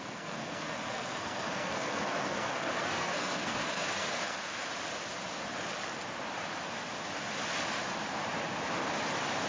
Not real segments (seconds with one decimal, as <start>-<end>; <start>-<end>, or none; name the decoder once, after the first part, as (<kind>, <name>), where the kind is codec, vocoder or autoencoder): 0.0-4.4 (codec, SNAC)